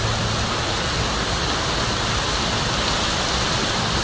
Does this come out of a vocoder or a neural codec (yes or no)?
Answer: no